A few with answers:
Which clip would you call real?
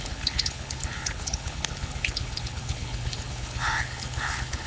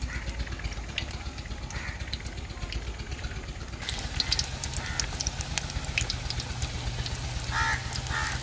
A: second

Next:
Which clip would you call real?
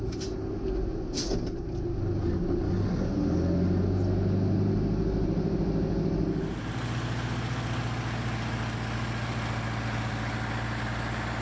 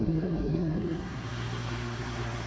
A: first